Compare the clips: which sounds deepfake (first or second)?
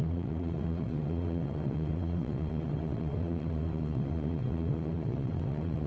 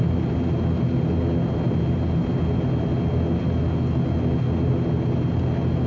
first